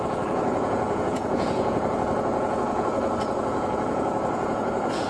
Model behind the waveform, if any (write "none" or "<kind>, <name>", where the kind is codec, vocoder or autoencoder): vocoder, Vocos